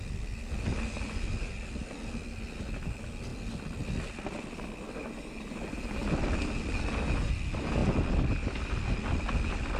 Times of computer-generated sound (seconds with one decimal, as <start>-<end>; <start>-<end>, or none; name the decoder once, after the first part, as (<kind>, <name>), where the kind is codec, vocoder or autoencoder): none